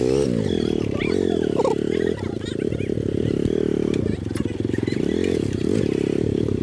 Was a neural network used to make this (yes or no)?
no